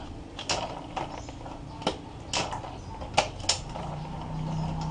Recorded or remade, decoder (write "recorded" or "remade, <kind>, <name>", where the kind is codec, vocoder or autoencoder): recorded